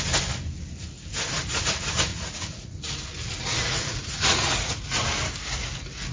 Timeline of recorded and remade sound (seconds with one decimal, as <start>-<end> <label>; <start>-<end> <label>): 0.0-2.1 recorded; 2.1-2.8 remade; 2.8-3.5 recorded; 3.5-5.0 remade; 5.0-6.1 recorded